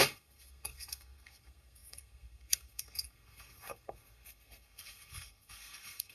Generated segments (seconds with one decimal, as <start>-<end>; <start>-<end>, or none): 0.0-6.1